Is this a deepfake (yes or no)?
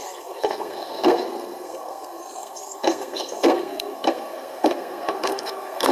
yes